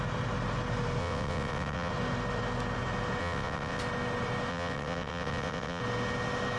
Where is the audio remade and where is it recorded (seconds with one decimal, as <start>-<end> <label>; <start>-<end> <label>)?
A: 0.0-1.0 recorded; 1.0-1.9 remade; 1.9-3.2 recorded; 3.2-3.8 remade; 3.8-4.5 recorded; 4.5-5.8 remade; 5.8-6.6 recorded